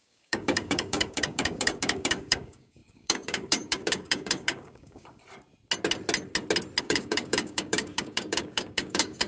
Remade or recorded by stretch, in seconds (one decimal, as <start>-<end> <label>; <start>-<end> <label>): 0.0-5.2 remade; 5.2-6.8 recorded; 6.8-9.3 remade